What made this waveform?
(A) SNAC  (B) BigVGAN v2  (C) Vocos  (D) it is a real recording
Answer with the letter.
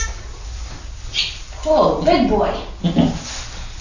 D